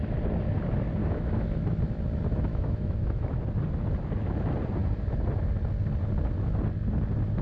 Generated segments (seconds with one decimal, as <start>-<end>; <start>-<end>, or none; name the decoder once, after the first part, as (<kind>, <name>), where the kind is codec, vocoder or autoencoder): 1.0-1.8 (autoencoder, DAC-VAE); 2.5-3.4

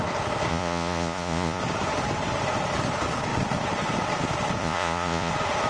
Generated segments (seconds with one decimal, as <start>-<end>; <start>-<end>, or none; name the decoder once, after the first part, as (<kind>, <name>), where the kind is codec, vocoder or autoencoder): 0.5-1.6 (vocoder, Vocos); 4.6-5.3

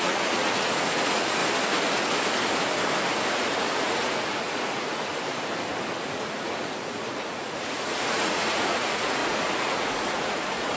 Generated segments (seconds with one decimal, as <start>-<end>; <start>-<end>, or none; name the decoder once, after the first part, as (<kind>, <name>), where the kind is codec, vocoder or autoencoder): 0.0-1.4 (vocoder, Vocos); 3.3-5.1; 6.0-10.8

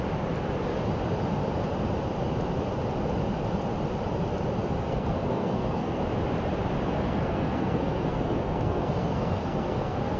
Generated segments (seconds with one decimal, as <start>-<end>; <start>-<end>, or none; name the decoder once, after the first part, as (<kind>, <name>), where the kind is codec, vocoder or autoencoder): 4.6-6.0 (codec, SNAC); 6.9-10.2